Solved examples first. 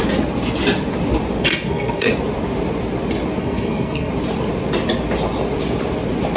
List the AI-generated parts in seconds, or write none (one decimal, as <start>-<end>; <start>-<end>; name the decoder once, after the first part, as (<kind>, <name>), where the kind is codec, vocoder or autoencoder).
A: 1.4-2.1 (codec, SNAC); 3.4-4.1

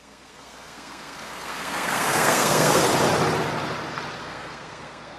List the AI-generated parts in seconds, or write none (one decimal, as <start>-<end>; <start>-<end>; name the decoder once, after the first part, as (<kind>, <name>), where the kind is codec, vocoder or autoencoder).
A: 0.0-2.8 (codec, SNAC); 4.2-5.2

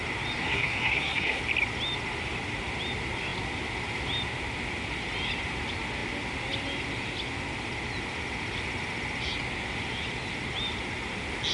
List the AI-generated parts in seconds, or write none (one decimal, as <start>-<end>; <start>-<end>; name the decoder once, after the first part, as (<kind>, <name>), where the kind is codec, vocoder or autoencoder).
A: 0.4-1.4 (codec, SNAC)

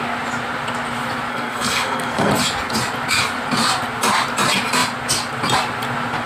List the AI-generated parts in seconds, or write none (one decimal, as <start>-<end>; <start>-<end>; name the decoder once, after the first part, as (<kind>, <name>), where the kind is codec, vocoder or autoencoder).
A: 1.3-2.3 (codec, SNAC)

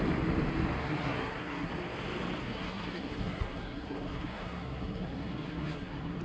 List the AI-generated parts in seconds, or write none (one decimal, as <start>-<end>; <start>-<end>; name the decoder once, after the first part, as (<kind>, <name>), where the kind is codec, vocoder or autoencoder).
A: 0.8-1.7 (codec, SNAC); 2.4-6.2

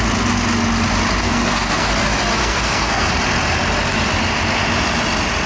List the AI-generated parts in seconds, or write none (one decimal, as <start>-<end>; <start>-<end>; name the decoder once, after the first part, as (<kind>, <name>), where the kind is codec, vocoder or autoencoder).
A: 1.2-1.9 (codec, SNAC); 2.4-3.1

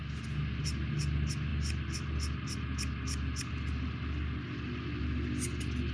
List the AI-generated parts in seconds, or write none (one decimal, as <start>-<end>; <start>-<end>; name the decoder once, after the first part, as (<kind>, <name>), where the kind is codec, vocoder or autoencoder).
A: none